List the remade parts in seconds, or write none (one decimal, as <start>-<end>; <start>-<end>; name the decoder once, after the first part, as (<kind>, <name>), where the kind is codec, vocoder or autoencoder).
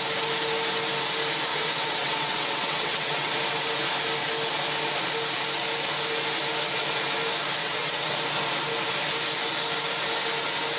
1.5-3.3 (vocoder, WaveNeXt); 7.6-8.2